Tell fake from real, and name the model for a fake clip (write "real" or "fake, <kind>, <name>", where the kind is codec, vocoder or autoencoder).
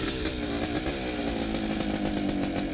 real